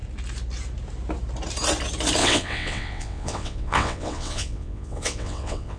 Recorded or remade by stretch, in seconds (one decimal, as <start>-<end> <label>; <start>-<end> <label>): 0.0-2.2 recorded; 2.2-5.8 remade